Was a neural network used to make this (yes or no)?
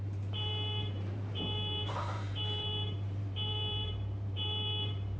yes